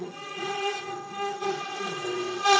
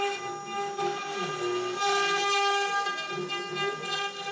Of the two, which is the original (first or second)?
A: second